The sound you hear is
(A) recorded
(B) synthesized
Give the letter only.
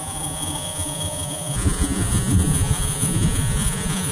B